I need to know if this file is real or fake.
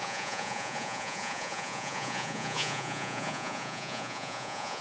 fake